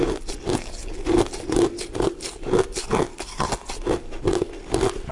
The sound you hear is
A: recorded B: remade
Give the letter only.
A